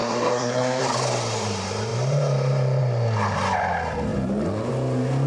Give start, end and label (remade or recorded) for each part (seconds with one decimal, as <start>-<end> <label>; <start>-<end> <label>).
0.0-0.8 remade; 0.8-5.3 recorded

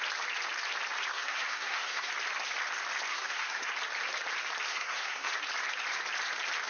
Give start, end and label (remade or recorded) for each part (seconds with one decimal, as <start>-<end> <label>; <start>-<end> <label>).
0.0-1.1 recorded; 1.1-2.1 remade; 2.1-3.1 recorded; 3.1-3.7 remade; 3.7-4.7 recorded; 4.7-5.3 remade; 5.3-6.7 recorded